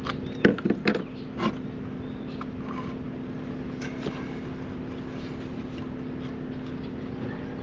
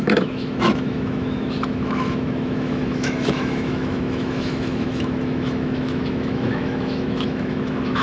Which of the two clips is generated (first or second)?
second